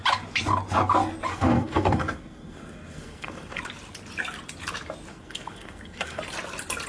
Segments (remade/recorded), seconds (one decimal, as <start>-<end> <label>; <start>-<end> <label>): 0.0-1.3 recorded; 1.3-3.6 remade; 3.6-5.1 recorded; 5.1-6.2 remade; 6.2-6.9 recorded